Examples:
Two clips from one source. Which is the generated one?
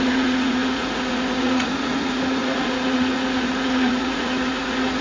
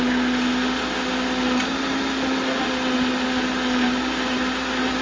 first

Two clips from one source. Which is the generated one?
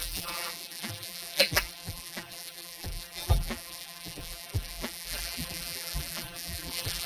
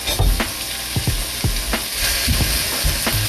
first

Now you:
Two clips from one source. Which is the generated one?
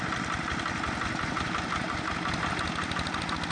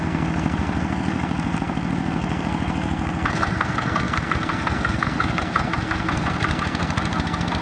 second